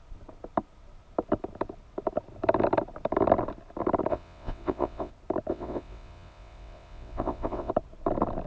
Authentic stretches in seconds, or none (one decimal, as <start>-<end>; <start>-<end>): 0.0-4.1; 5.1-5.5; 7.7-8.5